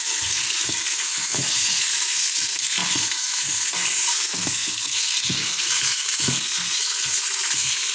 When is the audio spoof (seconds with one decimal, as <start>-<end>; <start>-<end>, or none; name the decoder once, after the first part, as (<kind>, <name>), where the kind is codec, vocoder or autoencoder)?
0.0-7.9 (codec, SNAC)